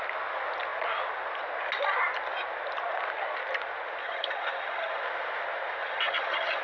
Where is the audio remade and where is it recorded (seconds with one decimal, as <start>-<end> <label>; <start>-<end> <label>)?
0.0-4.0 recorded; 4.0-5.0 remade; 5.0-5.8 recorded; 5.8-6.6 remade